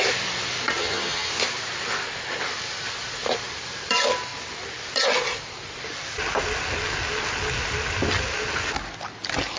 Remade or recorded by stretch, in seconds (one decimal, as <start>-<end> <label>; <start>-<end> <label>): 0.0-0.8 recorded; 0.8-1.3 remade; 1.3-9.6 recorded